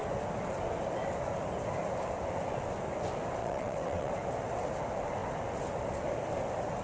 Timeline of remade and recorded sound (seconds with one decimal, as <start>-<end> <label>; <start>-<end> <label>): 0.0-3.4 recorded; 3.4-4.1 remade; 4.1-6.8 recorded